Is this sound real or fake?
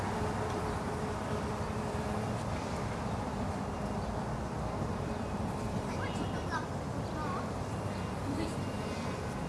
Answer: fake